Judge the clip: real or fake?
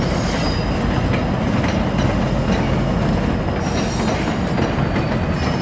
real